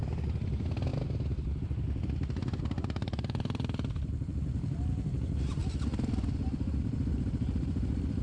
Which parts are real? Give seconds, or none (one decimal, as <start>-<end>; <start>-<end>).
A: 0.9-1.6